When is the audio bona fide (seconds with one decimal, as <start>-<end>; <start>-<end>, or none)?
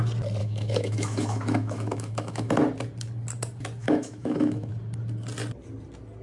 0.0-0.4; 2.5-3.8; 4.7-6.2